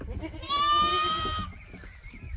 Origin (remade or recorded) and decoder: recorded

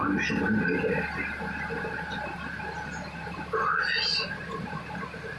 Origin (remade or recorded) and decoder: recorded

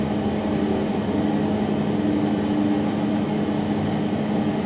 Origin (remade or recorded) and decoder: recorded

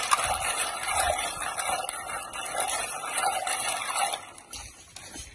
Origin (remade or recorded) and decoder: recorded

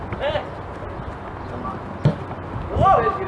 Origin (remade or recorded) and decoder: recorded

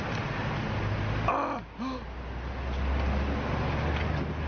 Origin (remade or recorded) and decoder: recorded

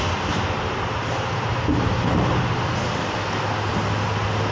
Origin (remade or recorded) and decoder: recorded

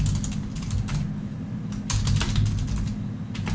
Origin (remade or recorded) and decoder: recorded